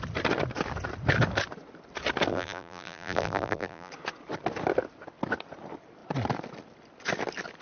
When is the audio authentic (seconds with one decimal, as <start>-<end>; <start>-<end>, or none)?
0.0-2.3; 3.9-7.6